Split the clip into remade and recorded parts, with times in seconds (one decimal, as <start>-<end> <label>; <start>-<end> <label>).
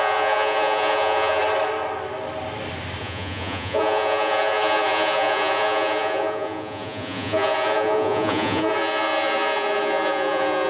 0.0-1.4 remade; 1.4-3.0 recorded; 3.0-10.7 remade